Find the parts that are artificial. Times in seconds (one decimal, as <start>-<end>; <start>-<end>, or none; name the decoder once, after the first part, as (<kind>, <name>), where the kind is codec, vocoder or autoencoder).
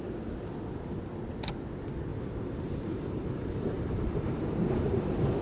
2.1-5.4 (vocoder, BigVGAN v2)